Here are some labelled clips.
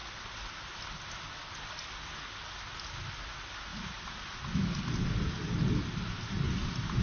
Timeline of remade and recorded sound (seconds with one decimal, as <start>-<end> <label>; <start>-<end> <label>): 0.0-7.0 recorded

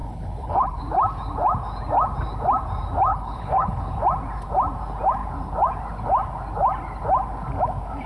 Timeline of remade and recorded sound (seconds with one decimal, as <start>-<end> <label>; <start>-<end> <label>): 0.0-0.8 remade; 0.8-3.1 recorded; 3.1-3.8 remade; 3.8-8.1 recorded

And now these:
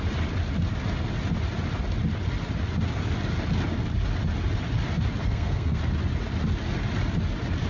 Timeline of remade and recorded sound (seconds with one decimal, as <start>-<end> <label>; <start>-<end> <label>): 0.0-5.2 recorded; 5.2-5.8 remade; 5.8-7.7 recorded

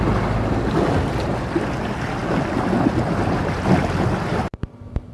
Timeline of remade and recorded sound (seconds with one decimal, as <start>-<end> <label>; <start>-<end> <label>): 0.0-5.1 recorded

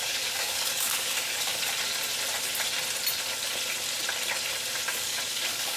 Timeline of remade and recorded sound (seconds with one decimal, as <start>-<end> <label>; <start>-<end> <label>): 0.0-1.5 remade; 1.5-5.0 recorded; 5.0-5.8 remade

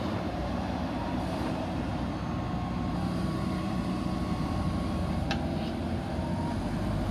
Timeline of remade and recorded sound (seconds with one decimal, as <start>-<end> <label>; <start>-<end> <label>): 0.0-1.9 remade; 1.9-2.9 recorded; 2.9-7.1 remade

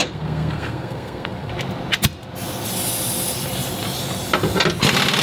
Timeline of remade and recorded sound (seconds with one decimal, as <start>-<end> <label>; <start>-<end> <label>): 0.0-1.5 remade; 1.5-5.2 recorded